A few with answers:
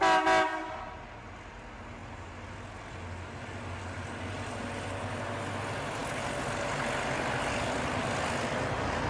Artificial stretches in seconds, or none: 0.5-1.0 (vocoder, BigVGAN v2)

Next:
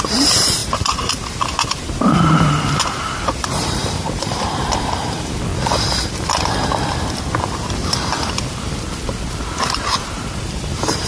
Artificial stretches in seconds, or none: 0.0-5.5 (vocoder, BigVGAN v2); 10.4-11.1

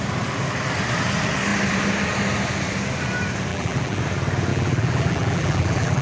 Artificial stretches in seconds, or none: 3.5-4.0 (vocoder, BigVGAN v2); 4.5-6.0

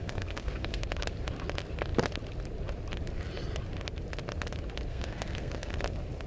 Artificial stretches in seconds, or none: 0.0-0.8 (codec, SNAC); 4.9-5.8

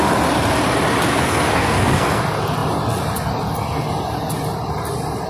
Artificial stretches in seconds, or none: 1.1-2.2 (codec, SNAC)

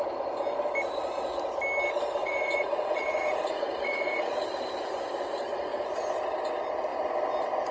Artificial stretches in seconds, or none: 2.2-4.4 (vocoder, Vocos)